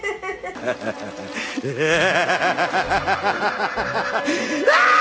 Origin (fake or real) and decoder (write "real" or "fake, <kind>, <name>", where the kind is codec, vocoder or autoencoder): real